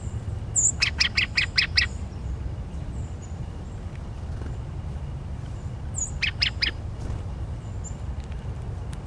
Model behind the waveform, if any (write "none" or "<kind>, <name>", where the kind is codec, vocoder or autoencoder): none